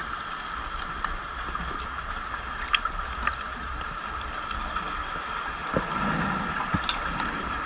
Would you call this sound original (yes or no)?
yes